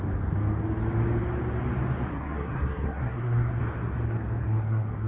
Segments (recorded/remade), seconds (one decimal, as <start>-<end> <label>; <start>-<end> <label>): 0.0-2.1 recorded; 2.1-3.6 remade; 3.6-4.4 recorded; 4.4-5.1 remade